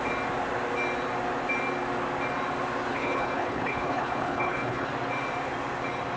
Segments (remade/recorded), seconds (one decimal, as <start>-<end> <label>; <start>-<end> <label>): 0.0-2.9 recorded; 2.9-4.9 remade; 4.9-6.2 recorded